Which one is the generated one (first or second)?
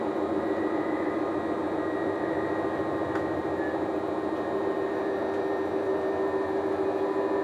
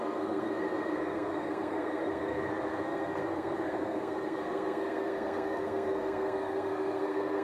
second